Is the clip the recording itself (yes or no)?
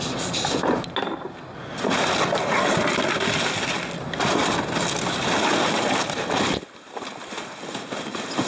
yes